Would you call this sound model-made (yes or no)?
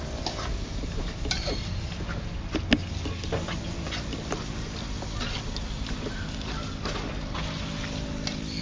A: no